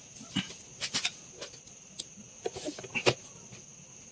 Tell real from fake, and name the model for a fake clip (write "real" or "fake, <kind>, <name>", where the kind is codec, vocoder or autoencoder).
real